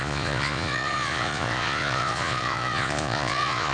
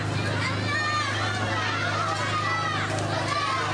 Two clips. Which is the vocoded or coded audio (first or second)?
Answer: first